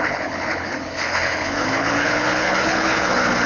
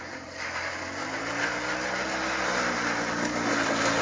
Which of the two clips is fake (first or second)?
first